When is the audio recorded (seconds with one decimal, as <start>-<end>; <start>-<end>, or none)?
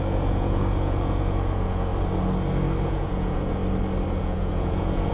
1.9-2.8; 3.6-4.1